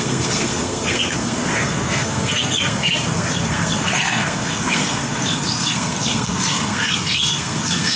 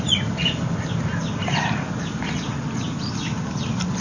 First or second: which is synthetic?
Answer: first